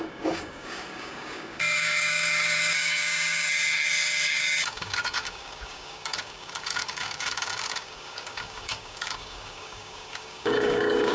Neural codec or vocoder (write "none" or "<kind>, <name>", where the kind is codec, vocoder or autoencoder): codec, DAC